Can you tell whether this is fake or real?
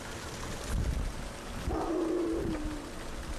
real